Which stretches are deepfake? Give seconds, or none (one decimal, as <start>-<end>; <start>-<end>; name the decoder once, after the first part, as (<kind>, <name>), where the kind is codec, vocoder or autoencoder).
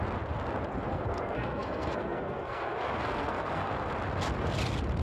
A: 0.9-3.9 (codec, SNAC)